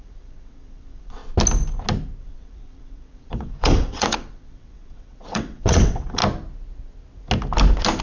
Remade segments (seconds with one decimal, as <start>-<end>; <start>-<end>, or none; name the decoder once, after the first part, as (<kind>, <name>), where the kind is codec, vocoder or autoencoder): 0.0-1.2 (vocoder, WaveNeXt); 2.2-6.2